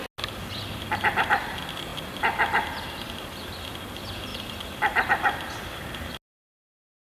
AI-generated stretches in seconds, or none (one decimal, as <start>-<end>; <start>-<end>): none